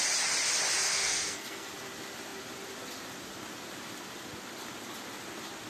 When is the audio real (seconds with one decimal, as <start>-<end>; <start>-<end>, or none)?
0.0-0.9; 1.7-5.7

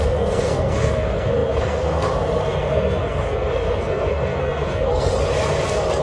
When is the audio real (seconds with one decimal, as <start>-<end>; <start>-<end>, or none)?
5.1-6.0